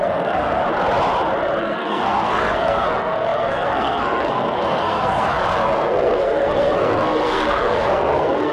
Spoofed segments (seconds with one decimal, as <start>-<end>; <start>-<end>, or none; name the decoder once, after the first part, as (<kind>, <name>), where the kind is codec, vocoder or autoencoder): 0.0-0.6 (codec, SNAC); 1.6-8.5